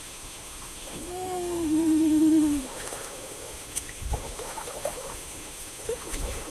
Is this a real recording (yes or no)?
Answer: no